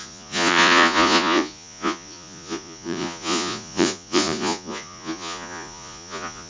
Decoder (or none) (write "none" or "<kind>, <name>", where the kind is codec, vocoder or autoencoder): vocoder, Vocos